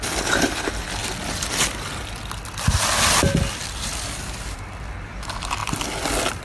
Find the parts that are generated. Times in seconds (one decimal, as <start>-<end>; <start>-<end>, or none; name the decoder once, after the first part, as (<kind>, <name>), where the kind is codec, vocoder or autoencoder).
0.0-6.4 (vocoder, BigVGAN v2)